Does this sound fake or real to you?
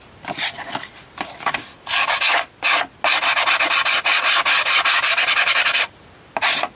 real